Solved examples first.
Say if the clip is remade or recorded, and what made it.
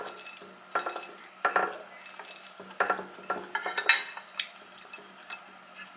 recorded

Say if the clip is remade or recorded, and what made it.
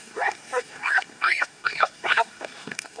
remade, codec, SNAC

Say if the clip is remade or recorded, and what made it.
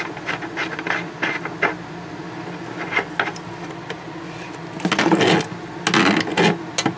recorded